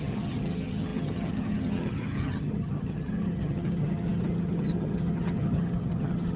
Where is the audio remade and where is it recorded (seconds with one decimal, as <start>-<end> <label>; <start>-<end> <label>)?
0.0-6.4 remade